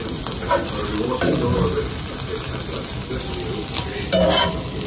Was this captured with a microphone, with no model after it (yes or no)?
yes